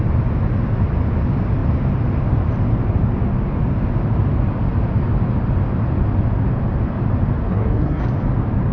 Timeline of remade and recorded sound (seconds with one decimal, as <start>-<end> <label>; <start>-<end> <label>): 0.0-7.4 recorded; 7.4-8.0 remade; 8.0-8.7 recorded